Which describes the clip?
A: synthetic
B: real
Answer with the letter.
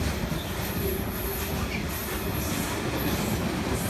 B